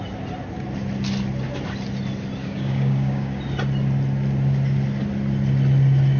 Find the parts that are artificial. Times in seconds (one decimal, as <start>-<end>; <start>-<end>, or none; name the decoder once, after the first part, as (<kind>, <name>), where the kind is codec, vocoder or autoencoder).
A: 2.4-3.4 (codec, DAC)